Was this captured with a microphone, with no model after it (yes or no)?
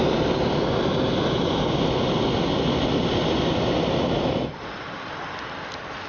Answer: yes